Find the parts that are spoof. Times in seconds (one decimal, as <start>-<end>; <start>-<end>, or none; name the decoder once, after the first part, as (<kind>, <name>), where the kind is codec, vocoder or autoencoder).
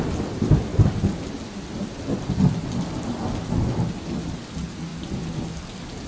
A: none